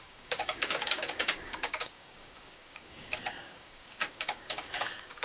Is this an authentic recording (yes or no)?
no